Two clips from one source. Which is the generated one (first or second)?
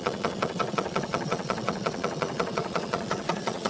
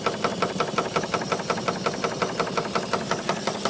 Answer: first